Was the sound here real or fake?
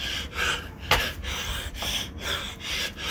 fake